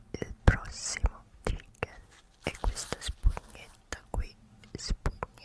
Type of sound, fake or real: real